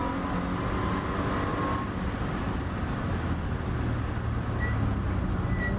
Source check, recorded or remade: recorded